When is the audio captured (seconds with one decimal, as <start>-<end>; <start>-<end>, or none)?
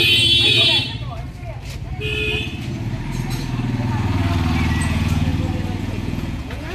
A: 0.8-4.8; 5.3-5.8